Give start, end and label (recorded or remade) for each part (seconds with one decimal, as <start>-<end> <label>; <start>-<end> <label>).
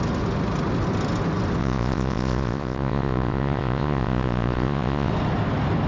0.0-1.6 recorded; 1.6-5.1 remade; 5.1-5.9 recorded